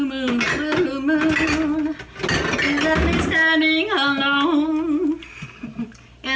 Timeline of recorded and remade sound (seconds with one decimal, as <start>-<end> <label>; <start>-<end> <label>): 0.0-6.4 recorded